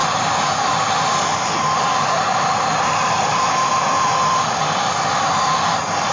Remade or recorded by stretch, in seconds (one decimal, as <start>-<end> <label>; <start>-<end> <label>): 0.0-6.1 recorded